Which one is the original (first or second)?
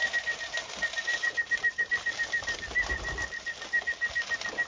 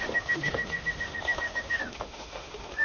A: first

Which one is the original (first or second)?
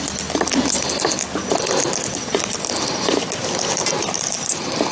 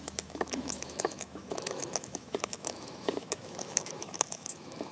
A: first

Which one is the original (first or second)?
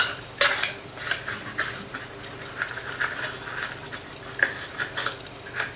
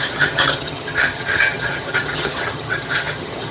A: first